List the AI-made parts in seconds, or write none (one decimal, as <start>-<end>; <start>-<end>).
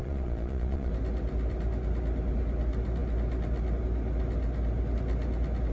0.0-0.9